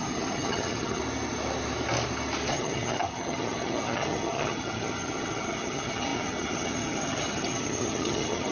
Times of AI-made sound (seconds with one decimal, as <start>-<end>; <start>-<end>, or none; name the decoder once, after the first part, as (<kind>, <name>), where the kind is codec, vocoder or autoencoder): 0.0-1.0 (vocoder, HiFi-GAN); 2.5-8.5